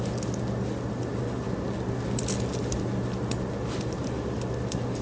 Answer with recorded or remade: recorded